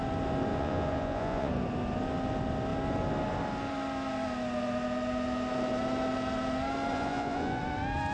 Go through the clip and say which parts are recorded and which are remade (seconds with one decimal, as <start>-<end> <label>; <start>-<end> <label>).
0.0-0.5 recorded; 0.5-1.5 remade; 1.5-6.9 recorded; 6.9-7.6 remade; 7.6-8.1 recorded

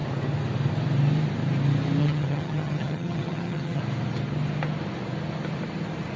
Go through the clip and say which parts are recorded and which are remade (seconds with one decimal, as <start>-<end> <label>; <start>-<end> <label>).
0.0-2.0 recorded; 2.0-3.8 remade; 3.8-6.2 recorded

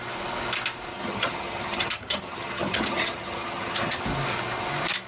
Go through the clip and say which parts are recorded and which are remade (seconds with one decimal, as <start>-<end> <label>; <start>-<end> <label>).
0.0-0.9 recorded; 0.9-4.0 remade; 4.0-5.1 recorded

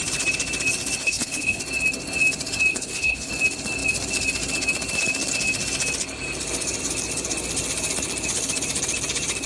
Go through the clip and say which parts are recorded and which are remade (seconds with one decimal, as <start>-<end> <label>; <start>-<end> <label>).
0.0-1.0 recorded; 1.0-1.6 remade; 1.6-2.7 recorded; 2.7-3.3 remade; 3.3-9.5 recorded

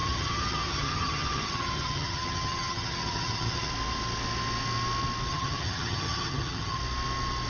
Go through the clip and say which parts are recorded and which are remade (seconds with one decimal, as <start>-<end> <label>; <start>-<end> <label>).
0.0-3.7 remade; 3.7-5.3 recorded; 5.3-6.8 remade; 6.8-7.5 recorded

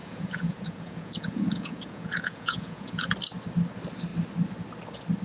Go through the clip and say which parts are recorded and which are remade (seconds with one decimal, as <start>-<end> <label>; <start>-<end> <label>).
0.0-3.1 remade; 3.1-5.2 recorded

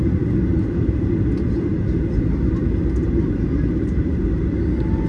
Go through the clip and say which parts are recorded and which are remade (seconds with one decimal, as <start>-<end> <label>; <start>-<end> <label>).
0.0-0.5 recorded; 0.5-1.1 remade; 1.1-1.5 recorded; 1.5-4.6 remade; 4.6-5.1 recorded